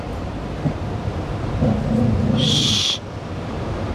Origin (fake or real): real